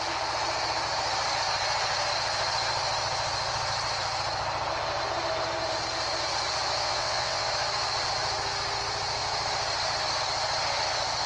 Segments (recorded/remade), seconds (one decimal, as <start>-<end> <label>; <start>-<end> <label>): 0.0-6.8 recorded; 6.8-7.5 remade; 7.5-11.3 recorded